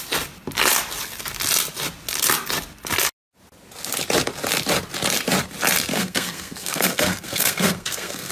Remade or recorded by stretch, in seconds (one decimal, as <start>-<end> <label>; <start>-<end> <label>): 0.0-5.9 recorded; 5.9-8.3 remade